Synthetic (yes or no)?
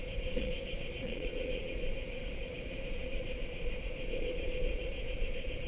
yes